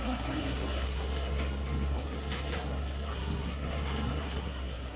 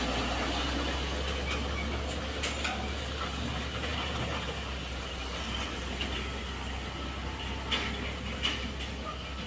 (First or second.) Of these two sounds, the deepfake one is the first